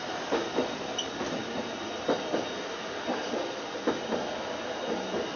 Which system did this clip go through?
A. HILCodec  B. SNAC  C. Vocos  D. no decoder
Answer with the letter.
D